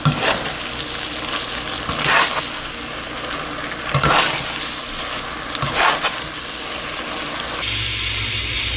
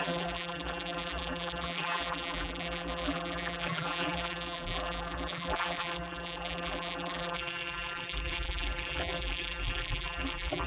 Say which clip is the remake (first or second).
second